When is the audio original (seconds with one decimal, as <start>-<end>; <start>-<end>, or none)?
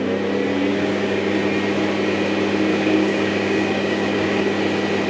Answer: 0.0-0.7; 1.3-2.7; 4.4-5.1